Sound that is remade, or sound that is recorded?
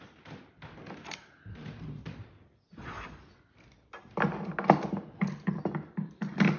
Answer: recorded